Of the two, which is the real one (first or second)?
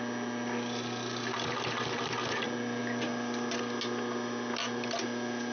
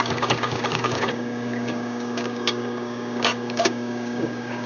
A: first